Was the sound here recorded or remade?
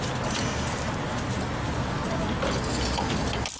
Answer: recorded